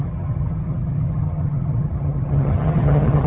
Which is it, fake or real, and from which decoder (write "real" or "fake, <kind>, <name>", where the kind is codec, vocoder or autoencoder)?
fake, vocoder, HiFi-GAN